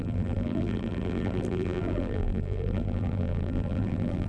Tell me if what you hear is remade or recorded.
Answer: remade